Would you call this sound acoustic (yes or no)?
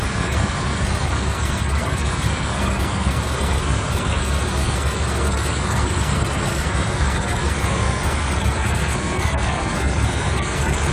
no